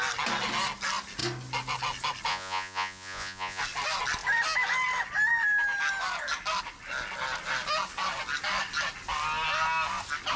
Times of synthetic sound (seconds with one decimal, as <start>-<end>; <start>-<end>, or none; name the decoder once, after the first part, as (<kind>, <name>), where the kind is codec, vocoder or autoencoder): 2.3-3.6 (vocoder, Vocos)